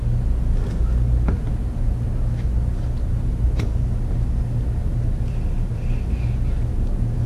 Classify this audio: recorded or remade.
recorded